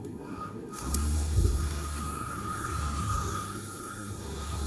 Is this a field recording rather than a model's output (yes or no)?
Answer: no